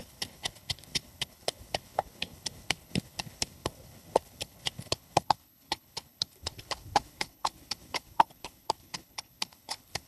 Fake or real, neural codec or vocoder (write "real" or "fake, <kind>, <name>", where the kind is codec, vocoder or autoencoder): fake, codec, HILCodec